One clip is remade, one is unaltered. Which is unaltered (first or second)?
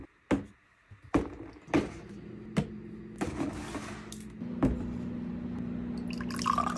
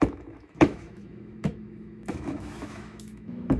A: first